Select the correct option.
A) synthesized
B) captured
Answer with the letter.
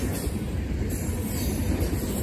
B